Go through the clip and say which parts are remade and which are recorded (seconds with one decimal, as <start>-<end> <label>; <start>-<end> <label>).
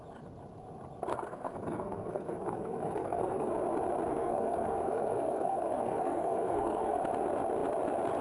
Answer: 0.0-1.1 recorded; 1.1-3.5 remade; 3.5-4.1 recorded; 4.1-7.0 remade; 7.0-8.2 recorded